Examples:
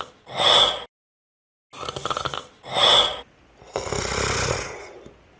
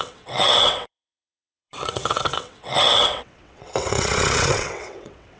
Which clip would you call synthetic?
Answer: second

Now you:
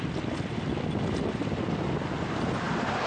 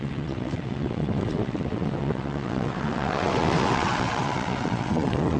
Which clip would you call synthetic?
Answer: second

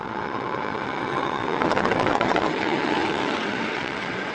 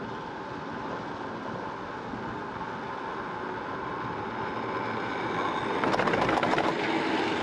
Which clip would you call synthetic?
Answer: first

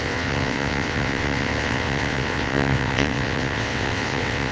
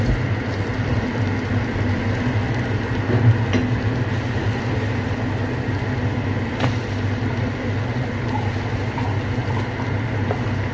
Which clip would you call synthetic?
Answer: first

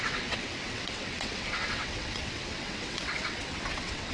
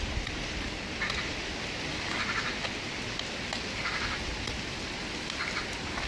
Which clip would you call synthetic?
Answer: first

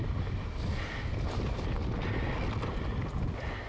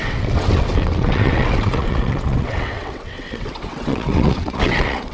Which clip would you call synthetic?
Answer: second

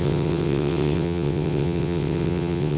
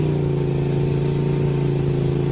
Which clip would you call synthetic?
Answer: first